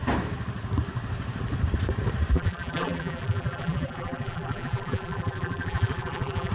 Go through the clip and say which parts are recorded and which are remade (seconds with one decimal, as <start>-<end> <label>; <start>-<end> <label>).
0.0-2.3 recorded; 2.3-6.5 remade